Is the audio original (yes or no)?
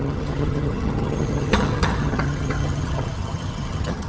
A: no